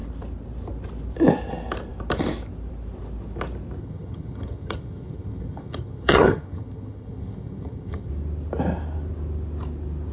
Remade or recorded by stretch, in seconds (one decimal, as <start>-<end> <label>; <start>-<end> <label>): 0.0-3.8 recorded; 3.8-8.1 remade; 8.1-10.1 recorded

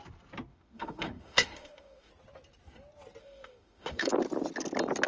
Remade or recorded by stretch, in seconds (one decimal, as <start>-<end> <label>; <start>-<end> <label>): 0.0-0.5 recorded; 0.5-2.1 remade; 2.1-3.2 recorded; 3.2-4.1 remade; 4.1-5.1 recorded

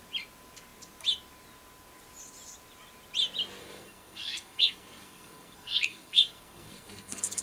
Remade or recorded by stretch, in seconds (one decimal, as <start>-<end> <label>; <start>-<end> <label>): 0.0-3.6 recorded; 3.6-7.4 remade

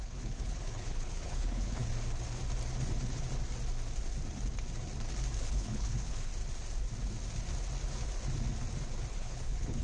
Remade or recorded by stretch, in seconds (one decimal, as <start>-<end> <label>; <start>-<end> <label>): 0.0-1.8 remade; 1.8-5.4 recorded; 5.4-6.3 remade; 6.3-9.1 recorded; 9.1-9.8 remade

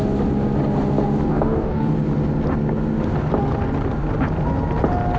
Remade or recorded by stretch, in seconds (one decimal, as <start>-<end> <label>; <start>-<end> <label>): 0.0-1.3 recorded; 1.3-1.9 remade; 1.9-5.2 recorded

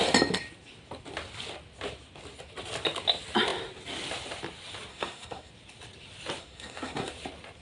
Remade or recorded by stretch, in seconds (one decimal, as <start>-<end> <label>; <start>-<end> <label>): 0.0-4.9 recorded; 4.9-5.5 remade; 5.5-6.4 recorded; 6.4-7.1 remade; 7.1-7.6 recorded